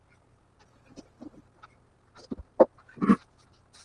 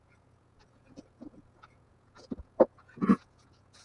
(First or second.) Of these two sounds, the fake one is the second